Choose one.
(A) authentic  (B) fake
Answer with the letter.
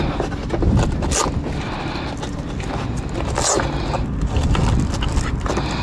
A